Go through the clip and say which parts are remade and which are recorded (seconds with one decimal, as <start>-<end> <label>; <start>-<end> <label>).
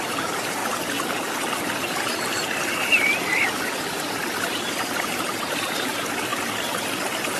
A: 0.0-0.6 remade; 0.6-3.9 recorded; 3.9-6.3 remade; 6.3-7.4 recorded